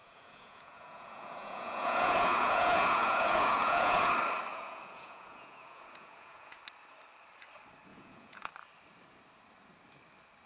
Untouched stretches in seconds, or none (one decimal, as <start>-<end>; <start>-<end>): 4.1-4.5; 6.6-7.9; 8.5-10.5